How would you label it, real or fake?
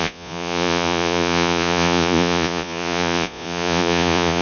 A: fake